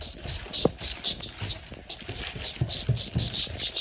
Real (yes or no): yes